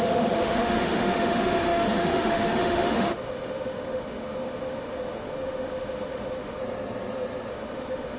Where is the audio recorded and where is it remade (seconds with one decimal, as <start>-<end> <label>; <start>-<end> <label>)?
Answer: 0.0-6.6 remade; 6.6-7.5 recorded; 7.5-8.2 remade